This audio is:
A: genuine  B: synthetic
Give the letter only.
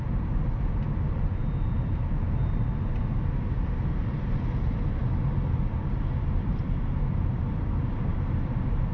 A